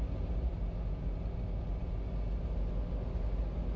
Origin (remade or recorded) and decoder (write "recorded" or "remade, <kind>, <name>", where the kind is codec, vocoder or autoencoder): recorded